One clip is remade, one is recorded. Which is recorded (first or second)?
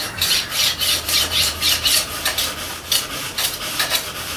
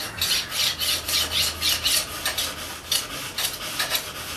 second